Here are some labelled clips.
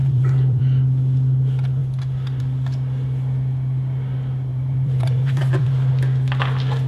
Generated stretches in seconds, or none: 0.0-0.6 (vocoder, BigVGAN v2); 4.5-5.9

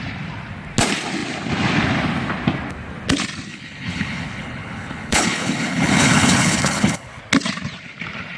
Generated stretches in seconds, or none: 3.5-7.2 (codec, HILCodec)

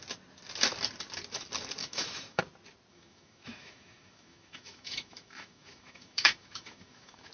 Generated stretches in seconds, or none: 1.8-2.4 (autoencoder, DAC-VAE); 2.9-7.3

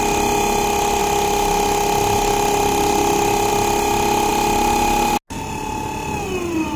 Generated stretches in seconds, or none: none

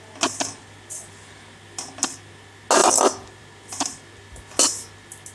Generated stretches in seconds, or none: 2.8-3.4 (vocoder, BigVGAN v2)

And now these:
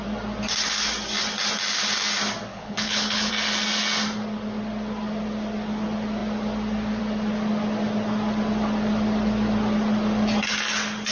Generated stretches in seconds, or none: 2.5-3.3 (codec, HILCodec)